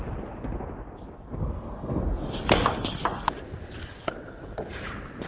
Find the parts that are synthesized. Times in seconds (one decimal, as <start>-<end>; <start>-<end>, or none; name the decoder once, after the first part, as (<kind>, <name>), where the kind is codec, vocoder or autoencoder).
1.4-2.0 (codec, SNAC)